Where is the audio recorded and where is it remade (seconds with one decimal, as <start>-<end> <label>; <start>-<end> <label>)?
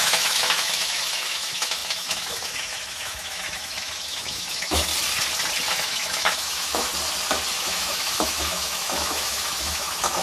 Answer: 0.0-4.9 remade; 4.9-5.7 recorded; 5.7-6.9 remade; 6.9-7.5 recorded; 7.5-10.2 remade